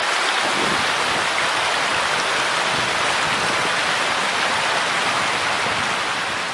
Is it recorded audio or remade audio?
recorded